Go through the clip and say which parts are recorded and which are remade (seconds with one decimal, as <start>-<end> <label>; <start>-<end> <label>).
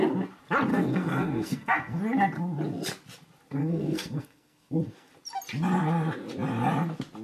0.0-0.7 recorded; 0.7-2.0 remade; 2.0-3.6 recorded; 3.6-5.1 remade; 5.1-7.2 recorded